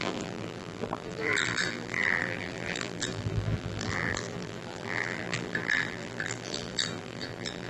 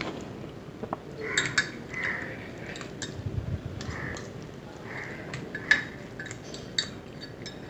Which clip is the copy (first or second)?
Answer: first